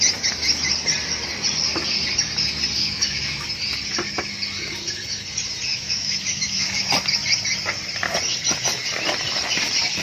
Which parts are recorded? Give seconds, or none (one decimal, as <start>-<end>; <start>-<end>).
0.0-2.8; 3.5-5.7; 6.9-10.0